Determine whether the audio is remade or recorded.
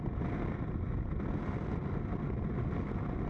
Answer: recorded